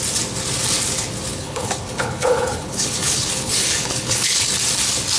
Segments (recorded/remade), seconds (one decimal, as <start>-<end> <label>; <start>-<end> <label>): 0.0-1.3 recorded; 1.3-4.4 remade; 4.4-5.2 recorded